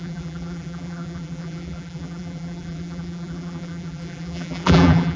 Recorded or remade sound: remade